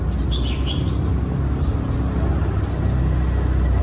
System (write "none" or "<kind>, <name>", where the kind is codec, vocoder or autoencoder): none